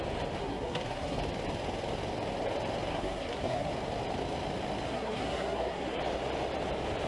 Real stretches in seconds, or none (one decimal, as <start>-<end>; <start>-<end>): 0.0-0.4; 1.2-2.9; 3.7-4.9; 6.0-7.1